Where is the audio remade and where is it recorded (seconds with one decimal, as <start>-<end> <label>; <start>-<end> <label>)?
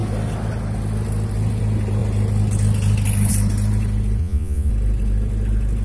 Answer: 0.0-4.2 recorded; 4.2-4.7 remade; 4.7-5.8 recorded